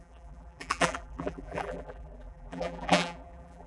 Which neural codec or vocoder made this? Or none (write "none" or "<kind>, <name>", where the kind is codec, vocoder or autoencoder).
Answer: vocoder, BigVGAN v2